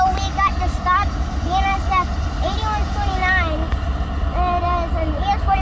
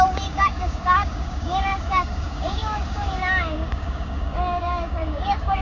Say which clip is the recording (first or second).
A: first